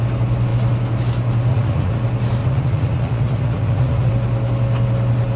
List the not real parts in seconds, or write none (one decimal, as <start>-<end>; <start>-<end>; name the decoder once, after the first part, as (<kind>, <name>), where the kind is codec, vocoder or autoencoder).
1.5-2.0 (vocoder, Vocos); 2.4-4.1